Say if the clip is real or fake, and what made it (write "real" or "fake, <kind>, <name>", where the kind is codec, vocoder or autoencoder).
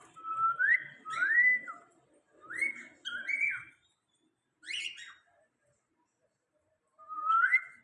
fake, vocoder, BigVGAN v2